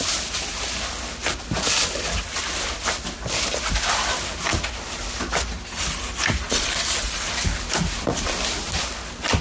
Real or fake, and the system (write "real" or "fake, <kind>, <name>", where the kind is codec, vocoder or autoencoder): real